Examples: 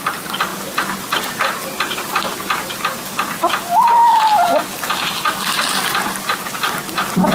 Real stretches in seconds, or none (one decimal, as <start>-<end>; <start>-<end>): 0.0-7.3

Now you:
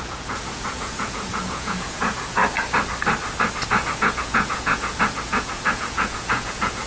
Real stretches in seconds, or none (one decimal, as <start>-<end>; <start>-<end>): 2.4-3.7

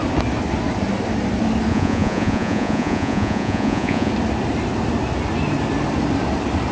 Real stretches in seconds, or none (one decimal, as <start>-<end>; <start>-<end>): 0.0-1.7; 4.1-6.7

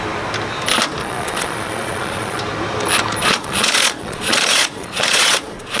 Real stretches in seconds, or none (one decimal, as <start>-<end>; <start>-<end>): 0.0-1.0; 2.4-3.2